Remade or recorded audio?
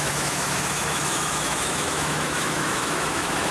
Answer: remade